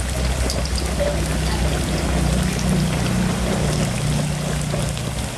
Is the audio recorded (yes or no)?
yes